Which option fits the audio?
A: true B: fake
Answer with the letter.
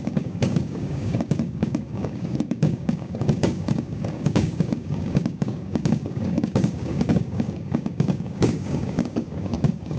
B